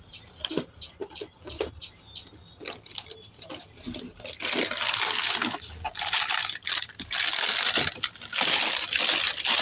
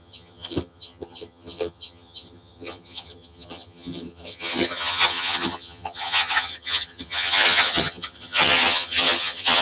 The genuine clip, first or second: first